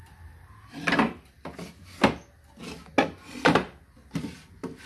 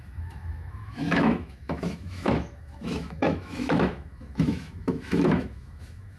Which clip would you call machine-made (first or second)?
second